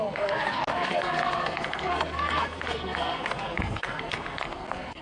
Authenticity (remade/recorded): remade